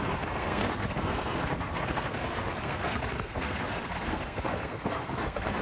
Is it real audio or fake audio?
fake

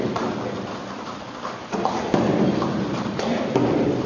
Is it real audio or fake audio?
real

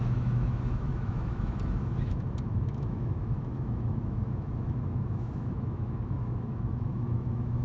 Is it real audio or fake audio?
fake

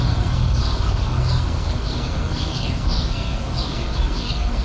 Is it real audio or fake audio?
fake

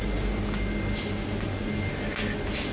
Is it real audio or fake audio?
real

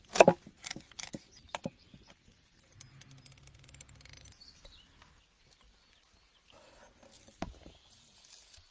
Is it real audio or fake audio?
real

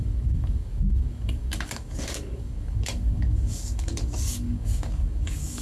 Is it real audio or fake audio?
fake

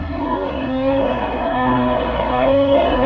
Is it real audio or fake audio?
fake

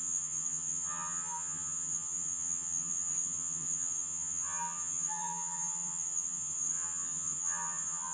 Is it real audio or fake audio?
fake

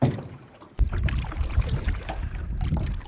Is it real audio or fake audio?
fake